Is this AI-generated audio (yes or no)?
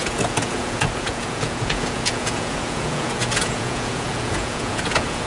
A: yes